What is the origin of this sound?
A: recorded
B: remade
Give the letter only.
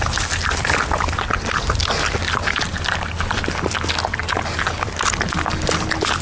A